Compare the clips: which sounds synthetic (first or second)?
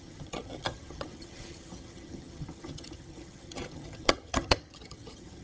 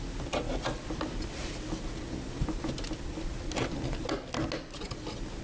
first